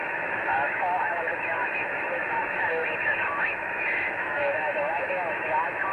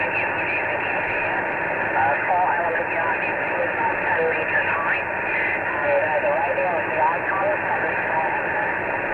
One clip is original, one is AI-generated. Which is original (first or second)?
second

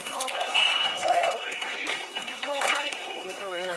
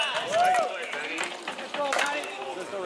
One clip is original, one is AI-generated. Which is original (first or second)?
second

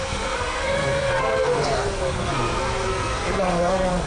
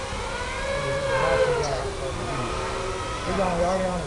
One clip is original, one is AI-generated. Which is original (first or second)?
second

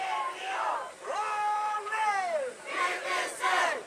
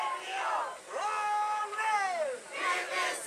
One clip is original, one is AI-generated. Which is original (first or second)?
second